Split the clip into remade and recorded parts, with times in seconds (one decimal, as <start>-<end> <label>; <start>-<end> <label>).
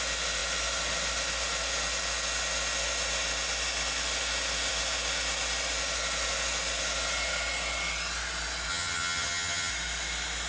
0.0-8.7 recorded; 8.7-9.7 remade; 9.7-10.5 recorded